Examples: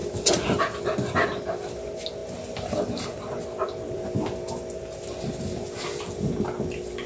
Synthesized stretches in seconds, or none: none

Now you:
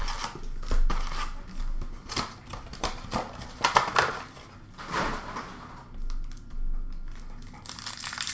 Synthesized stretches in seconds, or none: none

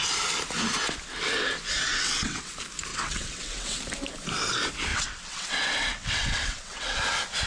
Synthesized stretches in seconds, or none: 1.9-2.5 (vocoder, WaveNeXt); 2.9-3.8; 4.9-7.0

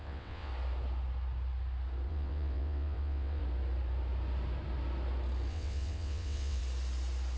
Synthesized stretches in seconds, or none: 0.0-0.5 (vocoder, WaveNeXt); 2.1-3.4; 5.5-6.6

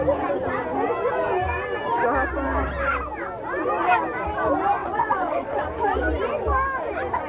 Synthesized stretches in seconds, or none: 4.8-5.6 (vocoder, WaveNeXt)

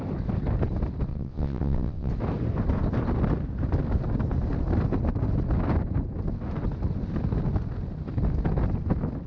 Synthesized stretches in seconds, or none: 1.1-2.1 (vocoder, WaveNeXt)